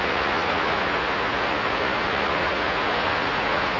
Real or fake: fake